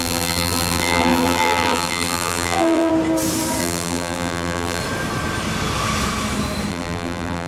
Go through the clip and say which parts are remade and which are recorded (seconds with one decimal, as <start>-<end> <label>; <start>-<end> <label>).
0.0-2.9 remade; 2.9-3.6 recorded; 3.6-4.8 remade; 4.8-6.7 recorded; 6.7-7.5 remade